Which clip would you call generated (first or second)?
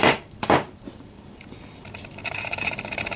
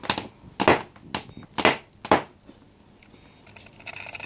first